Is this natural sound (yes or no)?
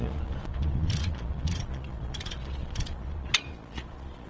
no